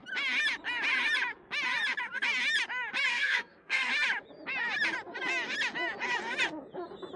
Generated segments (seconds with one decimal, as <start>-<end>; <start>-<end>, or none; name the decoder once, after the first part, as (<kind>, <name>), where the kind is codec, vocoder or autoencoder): 3.1-3.9 (codec, SNAC)